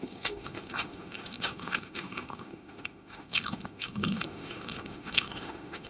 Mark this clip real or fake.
fake